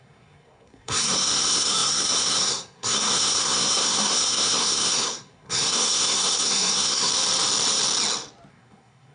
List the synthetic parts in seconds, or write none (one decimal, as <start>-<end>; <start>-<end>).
0.0-7.1; 8.5-9.1